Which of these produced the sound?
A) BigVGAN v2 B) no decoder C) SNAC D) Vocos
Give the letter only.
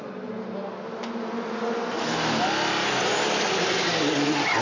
B